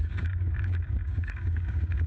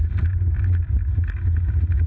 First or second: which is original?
second